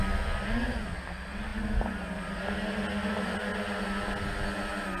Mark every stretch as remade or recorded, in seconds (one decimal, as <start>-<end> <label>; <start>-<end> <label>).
0.0-5.0 recorded